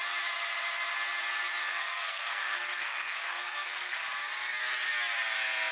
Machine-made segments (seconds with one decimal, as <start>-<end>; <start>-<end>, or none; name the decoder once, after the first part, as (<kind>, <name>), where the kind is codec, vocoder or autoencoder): 1.6-4.0 (codec, SNAC)